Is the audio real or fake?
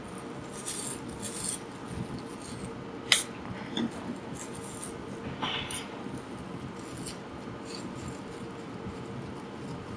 real